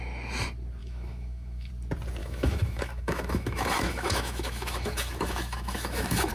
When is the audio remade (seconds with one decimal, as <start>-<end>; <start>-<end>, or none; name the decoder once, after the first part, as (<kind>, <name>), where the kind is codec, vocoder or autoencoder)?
0.8-1.7 (autoencoder, DAC-VAE); 2.2-6.3